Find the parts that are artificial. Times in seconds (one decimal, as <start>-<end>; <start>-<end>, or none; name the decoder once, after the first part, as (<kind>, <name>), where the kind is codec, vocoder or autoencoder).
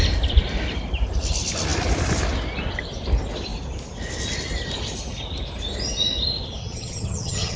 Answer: 6.6-7.6 (vocoder, HiFi-GAN)